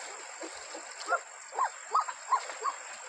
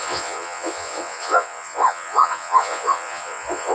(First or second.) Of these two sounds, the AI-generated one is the second